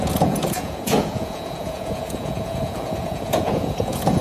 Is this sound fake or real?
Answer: fake